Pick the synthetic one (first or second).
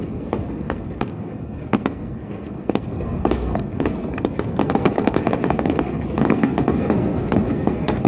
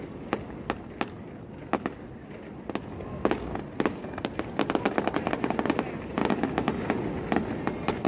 first